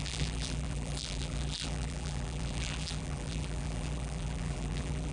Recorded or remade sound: remade